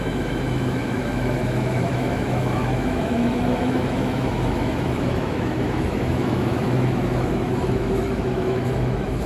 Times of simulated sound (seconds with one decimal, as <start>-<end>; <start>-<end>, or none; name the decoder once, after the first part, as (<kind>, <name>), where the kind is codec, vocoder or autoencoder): 0.0-9.3 (autoencoder, DAC-VAE)